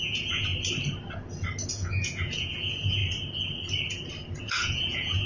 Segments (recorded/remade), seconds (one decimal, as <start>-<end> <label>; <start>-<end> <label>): 0.0-0.5 remade; 0.5-1.7 recorded; 1.7-3.0 remade; 3.0-4.4 recorded; 4.4-5.3 remade